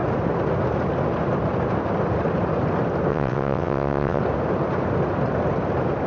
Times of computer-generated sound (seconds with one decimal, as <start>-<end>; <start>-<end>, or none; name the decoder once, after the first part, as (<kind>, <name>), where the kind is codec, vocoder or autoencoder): 3.1-4.2 (vocoder, WaveNeXt)